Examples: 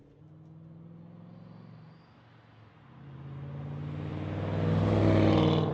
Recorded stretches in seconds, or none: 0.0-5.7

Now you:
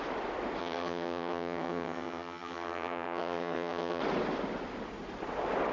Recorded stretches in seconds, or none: 0.0-0.6; 4.0-5.7

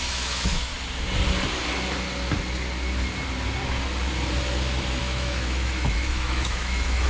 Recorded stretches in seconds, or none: 0.7-5.0

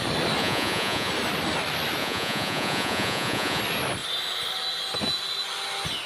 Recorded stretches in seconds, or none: 0.0-0.4; 1.1-2.0; 3.6-6.1

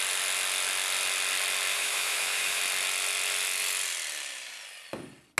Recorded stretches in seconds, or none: 0.0-1.7; 2.6-5.4

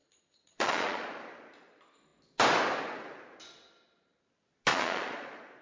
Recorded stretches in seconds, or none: 1.2-4.7

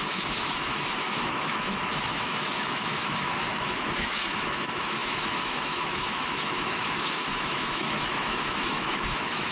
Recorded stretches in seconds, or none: none

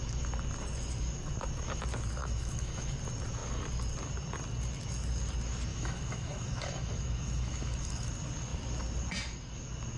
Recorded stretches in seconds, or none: 0.0-2.2; 2.9-5.7; 8.1-10.0